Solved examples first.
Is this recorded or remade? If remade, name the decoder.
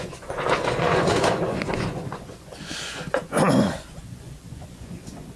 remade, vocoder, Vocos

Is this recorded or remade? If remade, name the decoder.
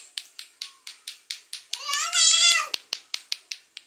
recorded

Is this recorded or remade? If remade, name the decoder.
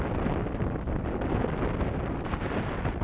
recorded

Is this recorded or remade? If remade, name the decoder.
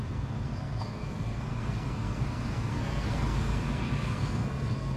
remade, codec, SNAC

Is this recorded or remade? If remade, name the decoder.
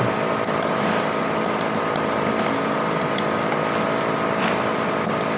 recorded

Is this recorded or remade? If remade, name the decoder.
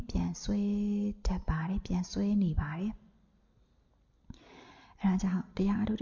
recorded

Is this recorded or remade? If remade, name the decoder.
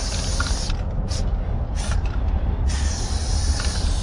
recorded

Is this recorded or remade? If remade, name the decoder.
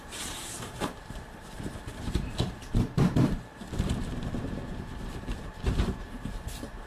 remade, vocoder, BigVGAN v2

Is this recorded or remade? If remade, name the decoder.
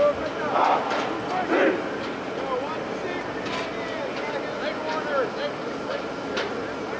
recorded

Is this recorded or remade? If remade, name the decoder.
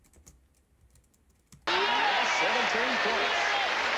recorded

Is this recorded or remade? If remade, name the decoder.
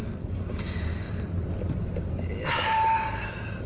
recorded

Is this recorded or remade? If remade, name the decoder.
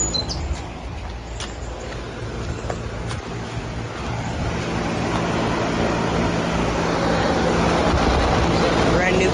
recorded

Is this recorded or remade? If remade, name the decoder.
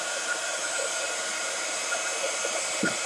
recorded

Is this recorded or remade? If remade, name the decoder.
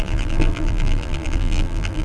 remade, vocoder, BigVGAN v2